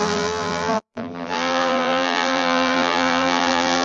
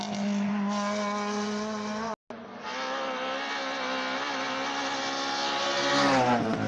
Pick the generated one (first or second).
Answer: first